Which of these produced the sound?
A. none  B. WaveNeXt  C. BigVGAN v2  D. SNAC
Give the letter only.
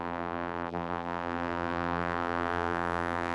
C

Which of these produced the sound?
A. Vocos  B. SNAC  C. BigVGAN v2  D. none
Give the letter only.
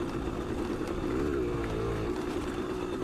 C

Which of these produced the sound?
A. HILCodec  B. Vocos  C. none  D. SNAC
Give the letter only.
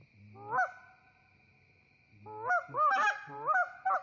C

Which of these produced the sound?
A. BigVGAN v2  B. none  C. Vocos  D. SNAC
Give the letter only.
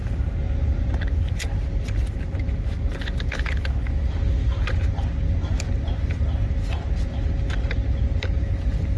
B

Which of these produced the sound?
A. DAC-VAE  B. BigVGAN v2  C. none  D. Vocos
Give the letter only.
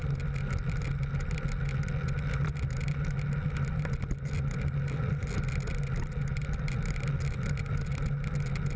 C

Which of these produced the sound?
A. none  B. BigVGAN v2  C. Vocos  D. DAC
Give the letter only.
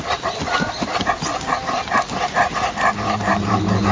A